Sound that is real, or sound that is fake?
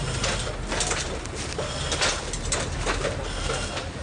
real